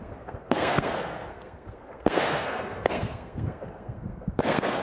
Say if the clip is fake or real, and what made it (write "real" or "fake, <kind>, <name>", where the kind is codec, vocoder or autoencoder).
fake, codec, SNAC